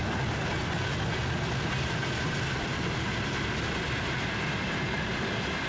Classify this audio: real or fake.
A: real